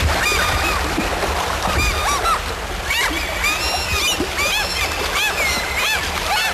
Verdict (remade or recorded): recorded